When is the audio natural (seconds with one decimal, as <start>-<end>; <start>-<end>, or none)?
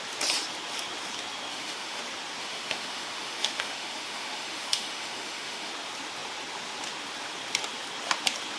0.0-1.5; 2.0-2.4; 5.7-8.6